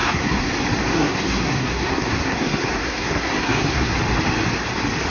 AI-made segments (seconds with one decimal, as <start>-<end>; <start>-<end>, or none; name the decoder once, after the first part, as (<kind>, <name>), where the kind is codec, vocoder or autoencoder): 0.0-0.5 (codec, SNAC); 0.9-4.0